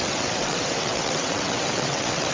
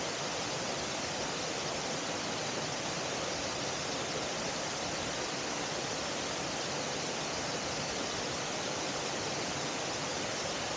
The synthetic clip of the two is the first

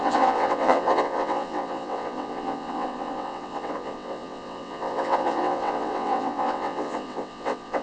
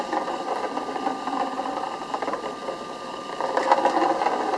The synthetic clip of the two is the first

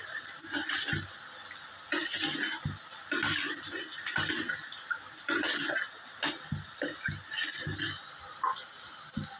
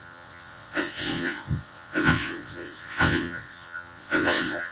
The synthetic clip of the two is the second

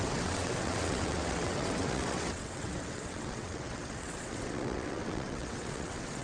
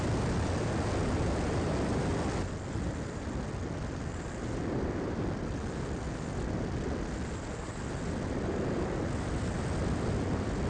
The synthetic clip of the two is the first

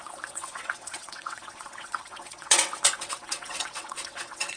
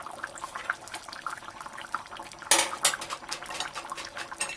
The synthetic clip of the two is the first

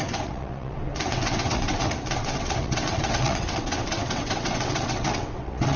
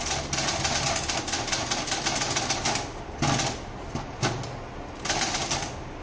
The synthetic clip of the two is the first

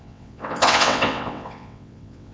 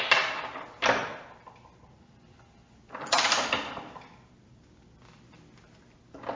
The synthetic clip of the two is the first